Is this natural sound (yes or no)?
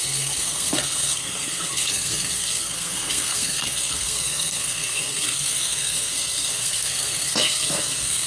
no